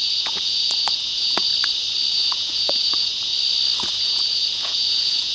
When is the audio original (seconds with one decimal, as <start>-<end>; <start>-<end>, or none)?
1.5-2.1; 3.3-4.0